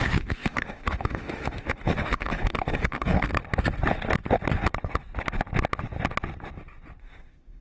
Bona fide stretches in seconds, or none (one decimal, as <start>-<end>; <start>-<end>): 3.3-7.0